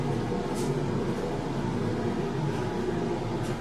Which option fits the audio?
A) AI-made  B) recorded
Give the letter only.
B